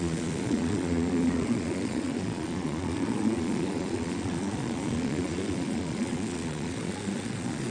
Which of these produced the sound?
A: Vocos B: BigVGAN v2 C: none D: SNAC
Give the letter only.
A